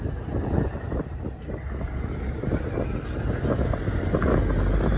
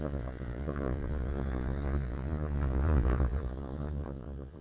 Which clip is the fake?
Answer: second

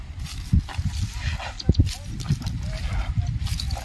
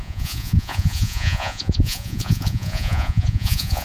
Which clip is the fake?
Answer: second